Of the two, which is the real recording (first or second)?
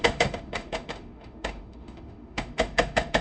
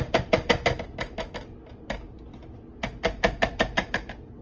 second